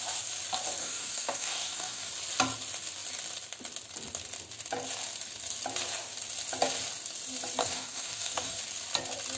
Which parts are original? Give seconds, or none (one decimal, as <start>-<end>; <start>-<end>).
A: 0.0-0.8; 2.1-7.6; 8.6-9.4